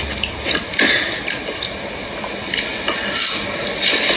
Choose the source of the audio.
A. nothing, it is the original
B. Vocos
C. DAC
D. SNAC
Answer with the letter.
A